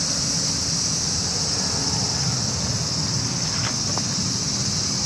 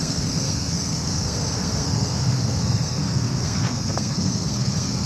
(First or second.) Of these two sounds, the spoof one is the second